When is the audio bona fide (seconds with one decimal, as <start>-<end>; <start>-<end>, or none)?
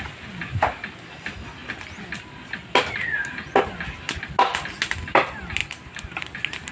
0.0-6.7